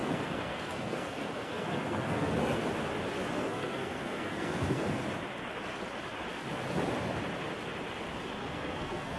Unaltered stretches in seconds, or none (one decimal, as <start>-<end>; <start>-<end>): 2.6-3.2; 5.0-8.4